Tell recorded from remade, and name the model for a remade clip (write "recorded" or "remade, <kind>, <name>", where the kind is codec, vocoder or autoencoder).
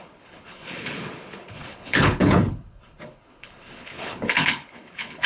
remade, codec, HILCodec